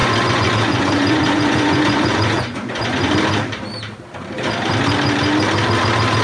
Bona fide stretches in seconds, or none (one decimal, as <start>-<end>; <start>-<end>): 3.1-6.2